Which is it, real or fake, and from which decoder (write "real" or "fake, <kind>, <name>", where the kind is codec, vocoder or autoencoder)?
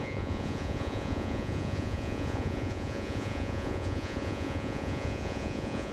fake, vocoder, Vocos